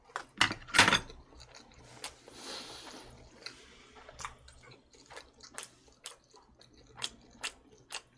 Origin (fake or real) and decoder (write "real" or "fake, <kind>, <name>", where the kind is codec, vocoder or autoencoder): real